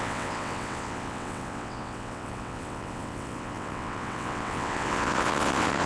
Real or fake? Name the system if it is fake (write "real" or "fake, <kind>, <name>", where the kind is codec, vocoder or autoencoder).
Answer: fake, vocoder, WaveNeXt